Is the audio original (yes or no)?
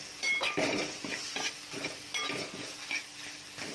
yes